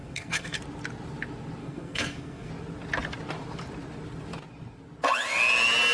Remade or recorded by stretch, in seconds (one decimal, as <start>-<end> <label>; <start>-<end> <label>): 0.0-0.6 remade; 0.6-1.6 recorded; 1.6-2.5 remade; 2.5-5.9 recorded